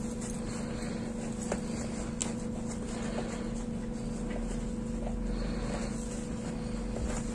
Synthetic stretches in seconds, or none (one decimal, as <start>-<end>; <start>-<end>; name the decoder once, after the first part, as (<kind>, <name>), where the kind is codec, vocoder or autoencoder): none